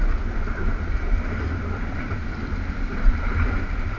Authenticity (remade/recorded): recorded